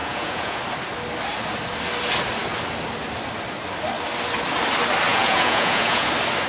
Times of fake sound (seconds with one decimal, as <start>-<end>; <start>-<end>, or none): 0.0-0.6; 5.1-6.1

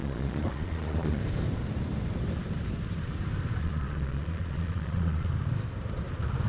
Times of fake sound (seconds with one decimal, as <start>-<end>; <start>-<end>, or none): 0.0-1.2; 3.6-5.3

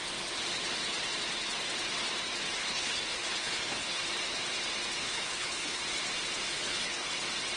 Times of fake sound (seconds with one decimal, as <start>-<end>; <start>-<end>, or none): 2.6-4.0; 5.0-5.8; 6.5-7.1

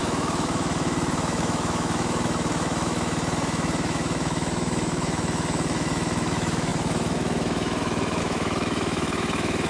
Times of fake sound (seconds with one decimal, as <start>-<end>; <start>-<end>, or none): 0.0-9.7

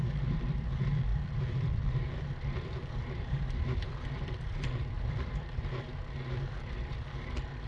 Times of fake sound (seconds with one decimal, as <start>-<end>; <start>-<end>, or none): 1.1-5.7